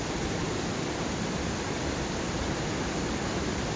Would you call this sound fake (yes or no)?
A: yes